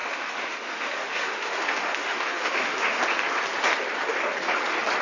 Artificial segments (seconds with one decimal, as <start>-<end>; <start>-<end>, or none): 0.0-3.0